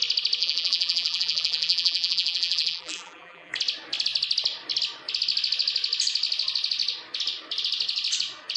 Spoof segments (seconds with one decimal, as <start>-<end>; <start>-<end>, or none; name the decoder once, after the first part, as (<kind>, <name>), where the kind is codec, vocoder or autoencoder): 0.4-3.5 (vocoder, BigVGAN v2)